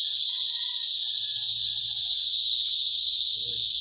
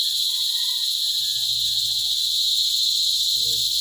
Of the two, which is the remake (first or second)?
first